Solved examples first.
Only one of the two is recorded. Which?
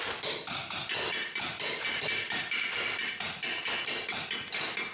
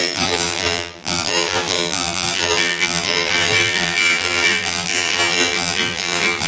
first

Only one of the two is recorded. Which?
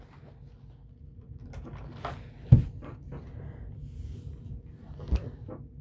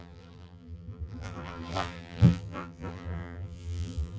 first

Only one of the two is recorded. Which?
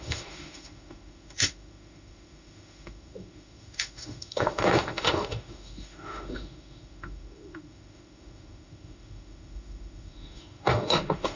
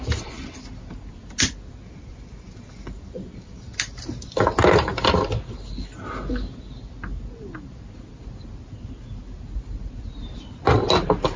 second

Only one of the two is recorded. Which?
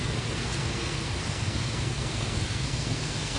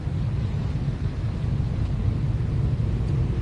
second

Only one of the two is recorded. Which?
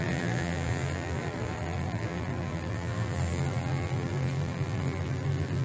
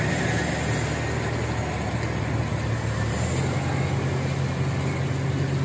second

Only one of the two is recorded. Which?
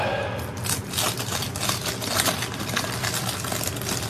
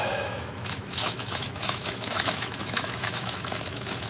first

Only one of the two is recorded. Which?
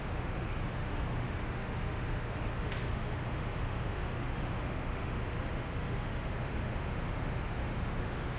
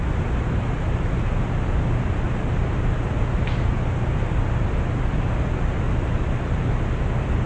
second